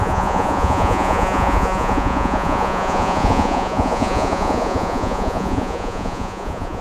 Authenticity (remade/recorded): remade